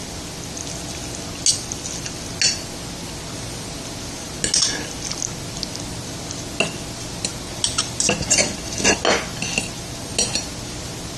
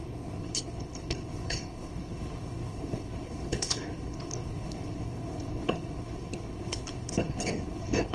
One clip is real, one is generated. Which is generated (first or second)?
second